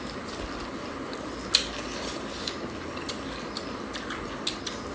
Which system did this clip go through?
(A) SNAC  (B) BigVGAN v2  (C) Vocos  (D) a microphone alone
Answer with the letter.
D